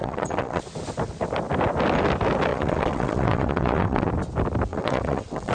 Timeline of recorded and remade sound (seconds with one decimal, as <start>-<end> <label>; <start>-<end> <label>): 0.0-0.6 remade; 0.6-2.5 recorded; 2.5-4.1 remade; 4.1-4.7 recorded; 4.7-5.5 remade